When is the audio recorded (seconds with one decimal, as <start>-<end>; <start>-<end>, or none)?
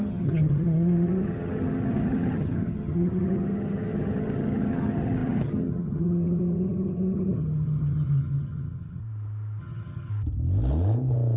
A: 9.0-9.6; 10.1-11.4